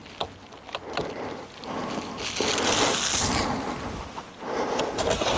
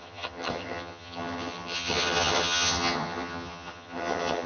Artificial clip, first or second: second